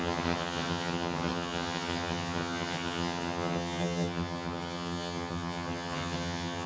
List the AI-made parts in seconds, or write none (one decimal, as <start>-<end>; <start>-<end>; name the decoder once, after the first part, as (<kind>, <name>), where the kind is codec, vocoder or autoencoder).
0.0-6.7 (vocoder, HiFi-GAN)